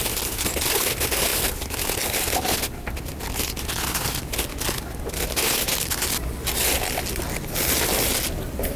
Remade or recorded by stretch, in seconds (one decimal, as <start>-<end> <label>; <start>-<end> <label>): 0.0-8.8 recorded

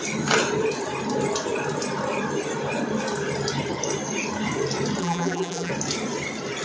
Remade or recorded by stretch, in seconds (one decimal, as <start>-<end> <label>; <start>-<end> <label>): 0.0-5.0 recorded; 5.0-5.7 remade; 5.7-6.6 recorded

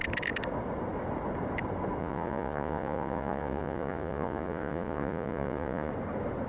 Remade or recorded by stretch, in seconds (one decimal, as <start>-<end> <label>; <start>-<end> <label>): 0.0-2.0 recorded; 2.0-5.9 remade; 5.9-6.5 recorded

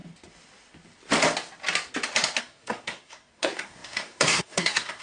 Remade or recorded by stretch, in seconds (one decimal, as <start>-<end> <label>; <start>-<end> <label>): 0.0-2.4 recorded; 2.4-5.0 remade

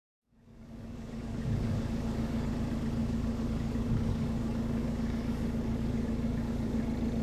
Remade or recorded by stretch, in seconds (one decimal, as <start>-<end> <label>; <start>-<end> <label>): 0.0-2.5 remade; 2.5-3.0 recorded; 3.0-6.8 remade; 6.8-7.2 recorded